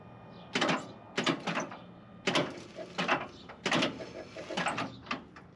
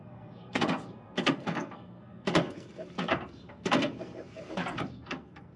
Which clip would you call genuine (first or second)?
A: first